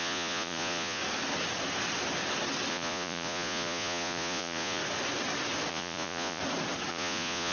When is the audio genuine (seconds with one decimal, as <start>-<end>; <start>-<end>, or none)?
1.0-2.7; 4.8-5.7; 6.4-6.9